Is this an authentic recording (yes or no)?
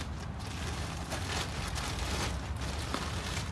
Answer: yes